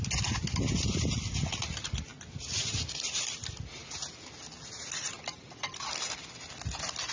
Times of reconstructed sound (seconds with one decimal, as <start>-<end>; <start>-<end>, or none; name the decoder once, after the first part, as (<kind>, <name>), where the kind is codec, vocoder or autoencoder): none